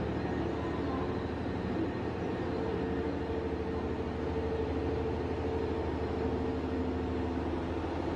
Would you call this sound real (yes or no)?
yes